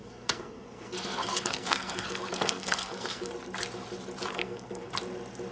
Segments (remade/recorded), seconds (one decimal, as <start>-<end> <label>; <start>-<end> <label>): 0.0-3.3 remade; 3.3-4.3 recorded; 4.3-4.9 remade; 4.9-5.5 recorded